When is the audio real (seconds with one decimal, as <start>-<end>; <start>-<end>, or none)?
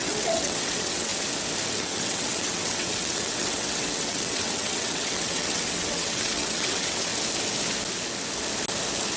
1.1-1.7; 7.1-9.2